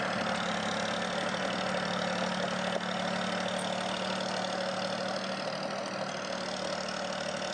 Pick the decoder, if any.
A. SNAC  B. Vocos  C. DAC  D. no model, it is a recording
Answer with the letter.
D